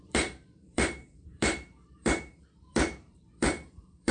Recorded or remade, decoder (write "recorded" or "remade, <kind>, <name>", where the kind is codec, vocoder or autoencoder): remade, vocoder, BigVGAN v2